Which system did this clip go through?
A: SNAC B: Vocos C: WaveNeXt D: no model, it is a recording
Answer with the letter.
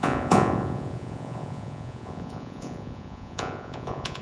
B